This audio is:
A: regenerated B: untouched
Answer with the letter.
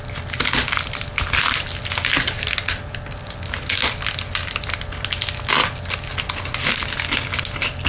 B